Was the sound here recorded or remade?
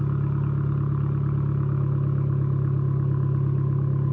recorded